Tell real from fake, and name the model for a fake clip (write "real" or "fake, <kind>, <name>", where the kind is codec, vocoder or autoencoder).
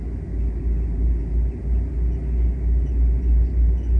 real